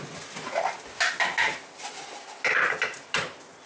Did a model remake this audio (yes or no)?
no